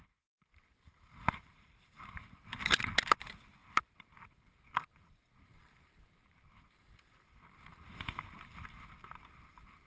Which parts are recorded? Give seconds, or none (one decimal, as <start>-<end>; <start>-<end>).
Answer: 0.0-9.9